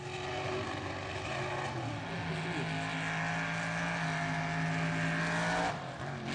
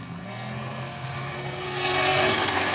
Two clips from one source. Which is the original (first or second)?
first